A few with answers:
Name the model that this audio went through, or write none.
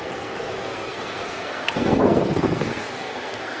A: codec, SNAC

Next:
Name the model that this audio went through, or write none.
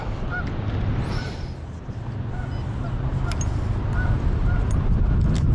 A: none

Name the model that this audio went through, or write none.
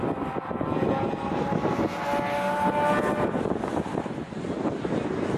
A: none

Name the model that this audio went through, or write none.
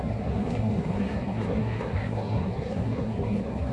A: codec, SNAC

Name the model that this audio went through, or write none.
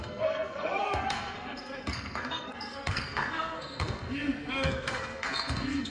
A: codec, SNAC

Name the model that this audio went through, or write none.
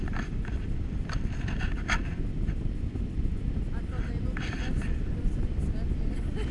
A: none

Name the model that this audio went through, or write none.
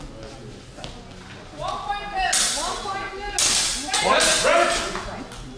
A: none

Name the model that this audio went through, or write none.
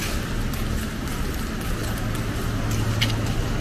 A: none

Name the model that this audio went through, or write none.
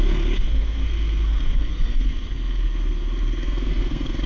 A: codec, SNAC